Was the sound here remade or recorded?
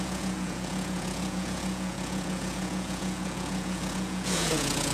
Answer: remade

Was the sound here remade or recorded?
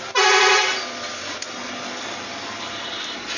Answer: recorded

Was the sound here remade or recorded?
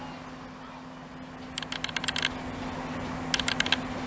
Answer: recorded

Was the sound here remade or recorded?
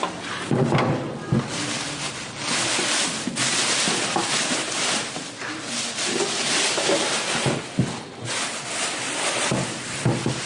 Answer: recorded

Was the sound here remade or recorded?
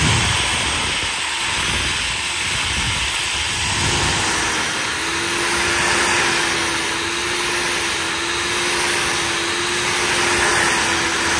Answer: recorded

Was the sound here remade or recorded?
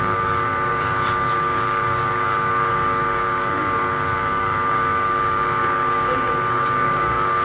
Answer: remade